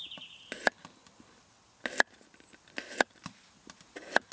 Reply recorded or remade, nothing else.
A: recorded